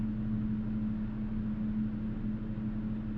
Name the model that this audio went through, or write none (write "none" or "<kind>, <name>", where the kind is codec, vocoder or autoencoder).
none